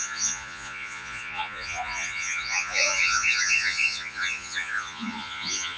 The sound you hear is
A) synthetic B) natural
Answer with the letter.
A